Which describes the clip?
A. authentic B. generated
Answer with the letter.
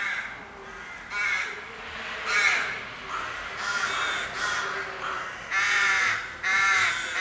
A